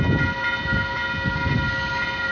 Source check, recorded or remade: recorded